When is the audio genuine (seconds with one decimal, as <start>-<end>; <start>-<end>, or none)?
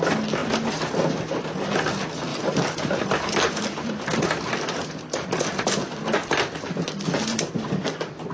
0.0-2.3; 4.9-7.3